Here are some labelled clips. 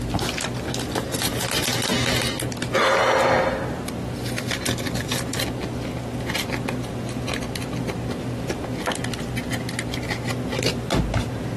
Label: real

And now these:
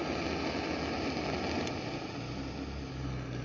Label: real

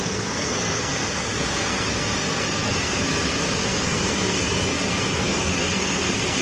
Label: fake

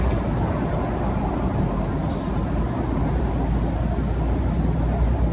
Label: real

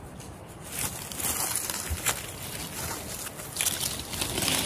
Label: real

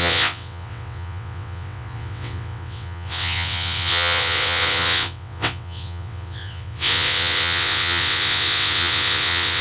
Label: fake